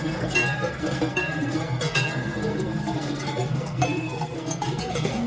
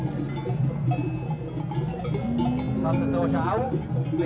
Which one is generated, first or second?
first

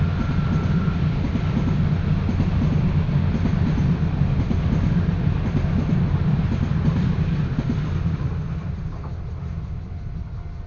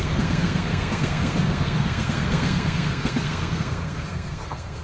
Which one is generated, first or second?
second